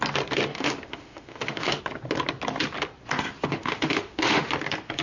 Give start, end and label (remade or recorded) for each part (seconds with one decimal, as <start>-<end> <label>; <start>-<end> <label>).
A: 0.0-0.5 recorded; 0.5-1.8 remade; 1.8-3.5 recorded; 3.5-4.5 remade; 4.5-5.0 recorded